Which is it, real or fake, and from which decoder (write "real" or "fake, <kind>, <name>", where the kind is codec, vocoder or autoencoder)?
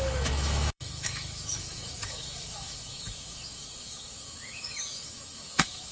fake, autoencoder, DAC-VAE